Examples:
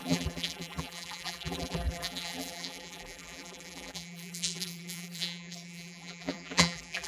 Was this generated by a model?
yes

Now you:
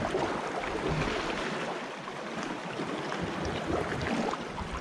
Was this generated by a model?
no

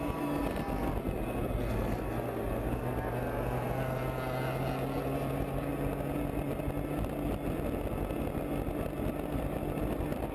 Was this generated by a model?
no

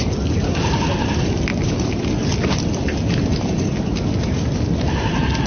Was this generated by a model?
no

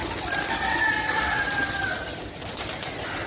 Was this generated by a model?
yes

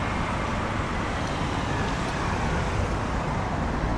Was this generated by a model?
yes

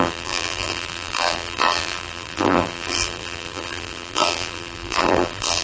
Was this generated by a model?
yes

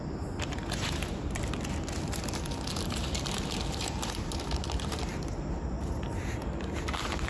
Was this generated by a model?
yes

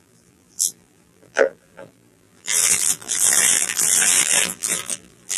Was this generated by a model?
yes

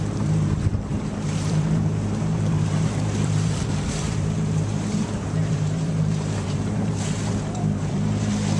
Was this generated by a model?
yes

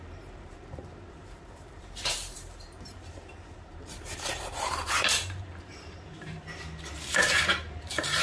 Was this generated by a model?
yes